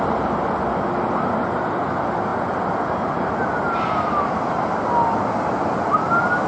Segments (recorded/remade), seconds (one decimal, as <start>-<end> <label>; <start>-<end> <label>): 0.0-6.5 recorded